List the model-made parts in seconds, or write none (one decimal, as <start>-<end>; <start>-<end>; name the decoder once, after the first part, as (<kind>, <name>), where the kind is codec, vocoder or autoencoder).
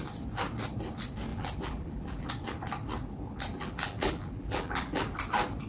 1.3-2.3 (vocoder, BigVGAN v2); 3.5-5.0